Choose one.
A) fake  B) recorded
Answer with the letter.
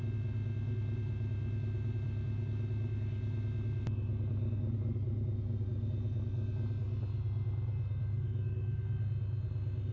B